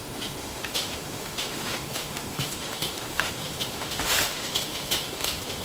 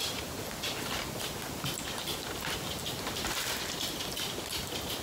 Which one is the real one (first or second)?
second